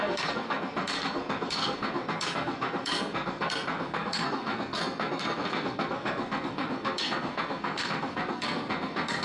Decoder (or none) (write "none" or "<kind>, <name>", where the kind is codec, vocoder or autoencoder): codec, SNAC